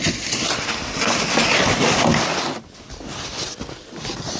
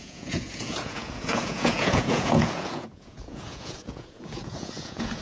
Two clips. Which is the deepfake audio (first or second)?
second